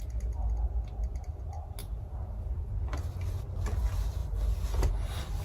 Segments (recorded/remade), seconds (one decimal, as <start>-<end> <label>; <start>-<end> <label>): 0.0-1.8 recorded; 1.8-2.7 remade; 2.7-5.4 recorded